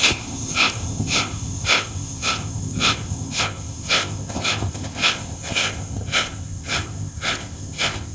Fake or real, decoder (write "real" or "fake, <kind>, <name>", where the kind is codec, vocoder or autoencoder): fake, codec, ZipCodec